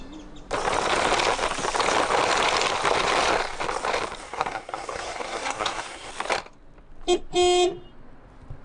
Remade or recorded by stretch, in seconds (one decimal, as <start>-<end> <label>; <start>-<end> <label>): 0.0-4.2 recorded; 4.2-6.1 remade; 6.1-8.6 recorded